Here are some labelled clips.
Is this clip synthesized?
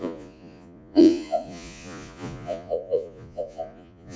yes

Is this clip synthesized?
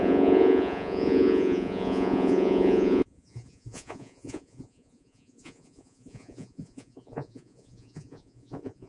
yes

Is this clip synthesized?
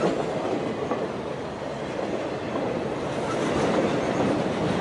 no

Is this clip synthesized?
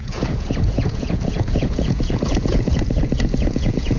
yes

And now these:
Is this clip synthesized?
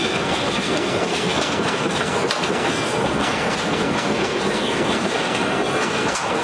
yes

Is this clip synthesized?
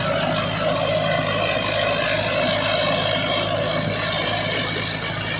no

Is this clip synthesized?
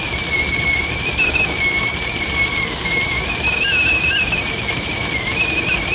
no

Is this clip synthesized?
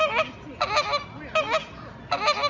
no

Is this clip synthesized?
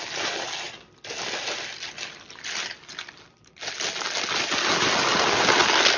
no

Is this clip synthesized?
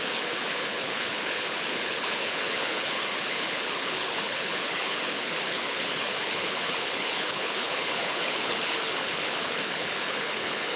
yes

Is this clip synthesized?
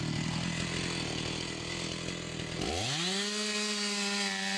no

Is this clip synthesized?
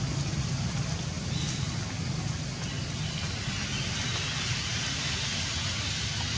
no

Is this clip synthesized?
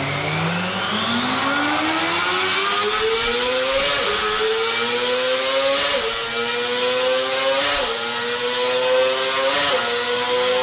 no